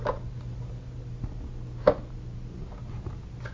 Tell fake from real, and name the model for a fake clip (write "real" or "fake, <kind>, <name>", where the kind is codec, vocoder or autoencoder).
real